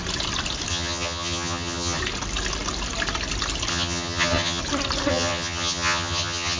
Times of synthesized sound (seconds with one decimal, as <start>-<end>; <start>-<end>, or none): 0.7-2.0; 3.7-4.6; 5.1-6.6